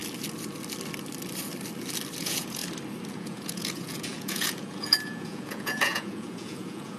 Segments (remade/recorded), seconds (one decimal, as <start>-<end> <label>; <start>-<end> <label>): 0.0-2.2 recorded; 2.2-2.6 remade; 2.6-3.1 recorded; 3.1-7.0 remade